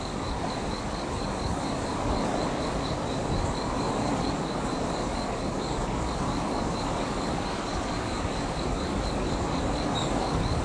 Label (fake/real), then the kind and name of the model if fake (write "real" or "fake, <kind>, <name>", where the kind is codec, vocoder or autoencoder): fake, codec, DAC